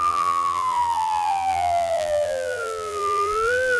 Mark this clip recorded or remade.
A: remade